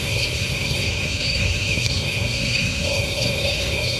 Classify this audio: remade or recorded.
remade